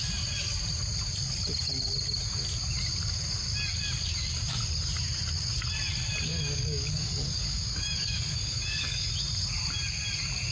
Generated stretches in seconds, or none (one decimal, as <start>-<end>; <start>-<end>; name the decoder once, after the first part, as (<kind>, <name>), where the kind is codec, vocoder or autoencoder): 6.3-9.1 (codec, DAC)